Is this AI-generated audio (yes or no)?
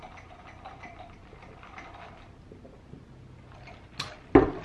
no